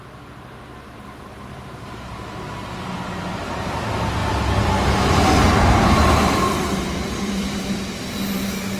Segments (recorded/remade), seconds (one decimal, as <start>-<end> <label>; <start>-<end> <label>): 0.0-4.2 recorded; 4.2-4.7 remade; 4.7-5.4 recorded; 5.4-7.9 remade; 7.9-8.8 recorded